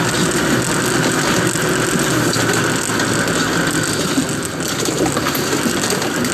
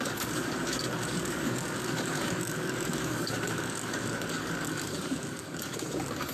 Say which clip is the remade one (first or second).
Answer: second